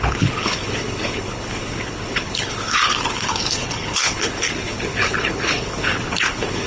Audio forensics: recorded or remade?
remade